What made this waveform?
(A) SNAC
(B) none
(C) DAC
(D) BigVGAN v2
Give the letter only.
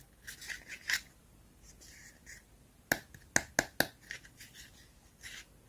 B